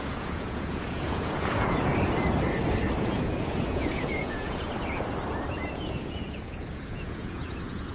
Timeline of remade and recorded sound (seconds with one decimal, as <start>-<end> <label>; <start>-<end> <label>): 0.0-1.9 remade; 1.9-3.0 recorded; 3.0-4.7 remade; 4.7-5.5 recorded; 5.5-7.9 remade